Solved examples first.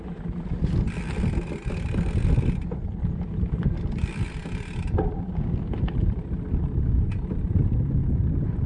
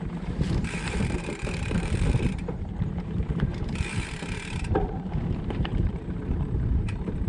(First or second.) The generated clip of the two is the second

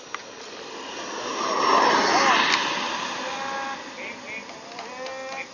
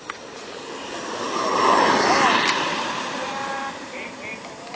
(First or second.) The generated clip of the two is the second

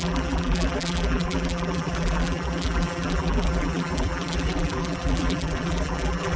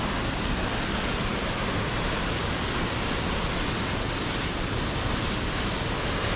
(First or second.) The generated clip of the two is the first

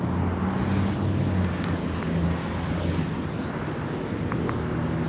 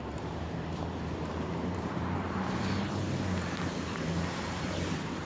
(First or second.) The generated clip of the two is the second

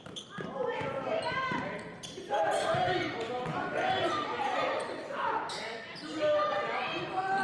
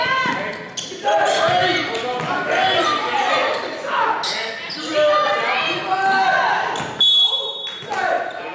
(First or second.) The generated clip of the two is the first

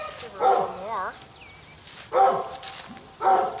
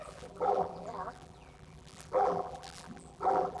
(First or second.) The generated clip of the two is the second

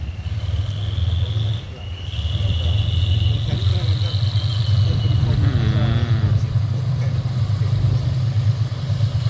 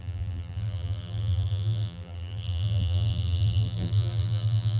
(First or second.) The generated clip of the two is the second